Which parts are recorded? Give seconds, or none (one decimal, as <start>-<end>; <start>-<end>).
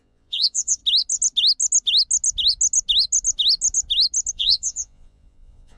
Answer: 0.8-4.3